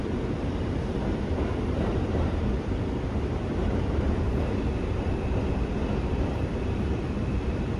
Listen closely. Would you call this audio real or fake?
fake